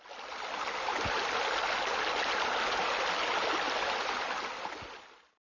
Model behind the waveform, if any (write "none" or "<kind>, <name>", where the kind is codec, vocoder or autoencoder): none